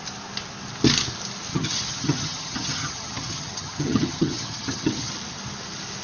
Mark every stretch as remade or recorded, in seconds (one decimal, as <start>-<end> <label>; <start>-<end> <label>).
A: 0.0-1.5 recorded; 1.5-5.1 remade; 5.1-6.0 recorded

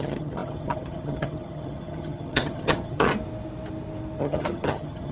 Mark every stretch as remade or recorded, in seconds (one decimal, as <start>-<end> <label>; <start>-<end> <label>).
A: 0.0-3.1 remade; 3.1-4.2 recorded; 4.2-5.1 remade

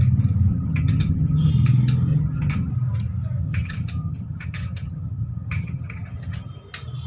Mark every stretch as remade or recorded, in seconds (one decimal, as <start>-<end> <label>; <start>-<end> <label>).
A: 0.0-0.5 recorded; 0.5-1.5 remade; 1.5-2.1 recorded; 2.1-2.7 remade; 2.7-3.4 recorded; 3.4-6.5 remade; 6.5-7.1 recorded

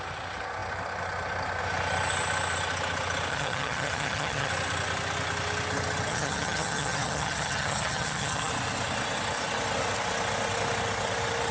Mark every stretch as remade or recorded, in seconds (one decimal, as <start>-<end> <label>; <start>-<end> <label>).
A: 0.0-3.3 recorded; 3.3-4.5 remade; 4.5-6.1 recorded; 6.1-8.5 remade; 8.5-11.5 recorded

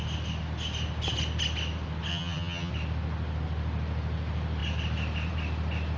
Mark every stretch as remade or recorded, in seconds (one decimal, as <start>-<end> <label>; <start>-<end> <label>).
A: 0.0-2.1 recorded; 2.1-2.7 remade; 2.7-6.0 recorded

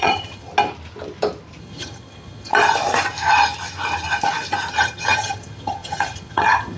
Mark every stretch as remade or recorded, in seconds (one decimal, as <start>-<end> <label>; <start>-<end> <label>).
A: 0.0-0.5 remade; 0.5-1.6 recorded; 1.6-2.5 remade; 2.5-4.7 recorded; 4.7-6.8 remade

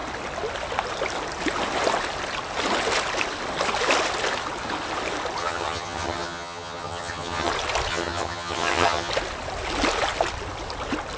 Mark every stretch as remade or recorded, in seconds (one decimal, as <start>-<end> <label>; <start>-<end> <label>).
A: 0.0-5.4 recorded; 5.4-7.5 remade; 7.5-7.9 recorded; 7.9-9.1 remade; 9.1-11.2 recorded

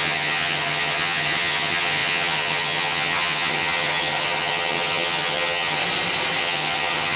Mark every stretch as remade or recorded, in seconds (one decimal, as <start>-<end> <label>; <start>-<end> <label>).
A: 0.0-5.8 remade; 5.8-6.4 recorded; 6.4-7.2 remade